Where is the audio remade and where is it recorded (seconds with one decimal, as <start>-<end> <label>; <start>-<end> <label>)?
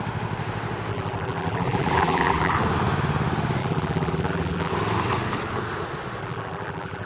0.0-0.9 recorded; 0.9-2.5 remade; 2.5-3.6 recorded; 3.6-4.7 remade; 4.7-6.2 recorded; 6.2-7.1 remade